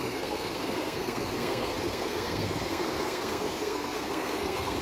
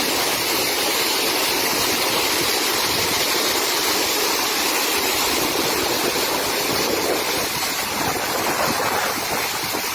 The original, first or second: second